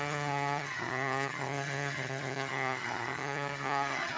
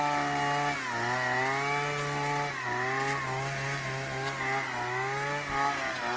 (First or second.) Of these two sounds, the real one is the second